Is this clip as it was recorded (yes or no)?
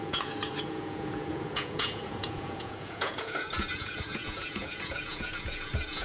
no